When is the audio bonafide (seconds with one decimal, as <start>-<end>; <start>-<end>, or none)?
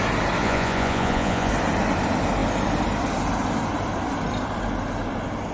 0.0-0.4; 1.5-5.5